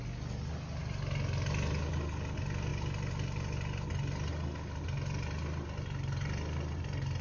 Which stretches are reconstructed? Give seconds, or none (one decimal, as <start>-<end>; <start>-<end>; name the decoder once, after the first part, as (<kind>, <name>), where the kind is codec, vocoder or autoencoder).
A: none